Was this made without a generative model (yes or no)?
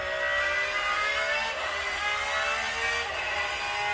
yes